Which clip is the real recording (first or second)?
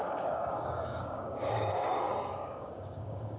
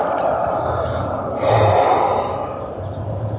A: second